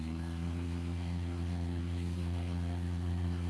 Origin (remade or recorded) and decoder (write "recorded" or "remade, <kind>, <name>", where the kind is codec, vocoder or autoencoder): remade, codec, SNAC